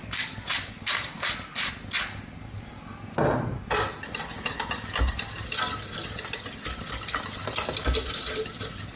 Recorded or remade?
recorded